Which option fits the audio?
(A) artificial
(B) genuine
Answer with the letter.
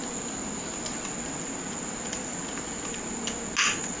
B